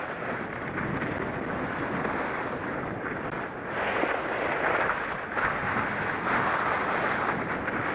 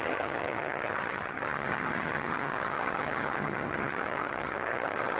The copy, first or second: second